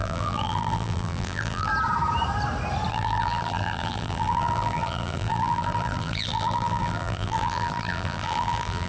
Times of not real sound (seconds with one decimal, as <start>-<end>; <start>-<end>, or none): 0.0-1.7; 2.9-8.9